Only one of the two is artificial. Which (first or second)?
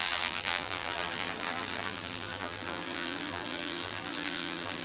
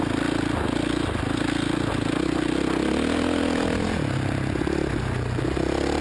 first